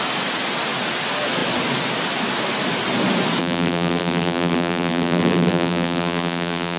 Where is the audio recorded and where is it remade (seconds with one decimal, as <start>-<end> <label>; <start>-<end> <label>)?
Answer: 0.0-3.4 recorded; 3.4-6.8 remade